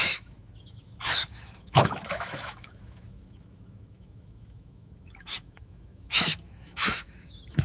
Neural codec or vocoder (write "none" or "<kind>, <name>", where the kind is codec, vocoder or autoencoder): autoencoder, DAC-VAE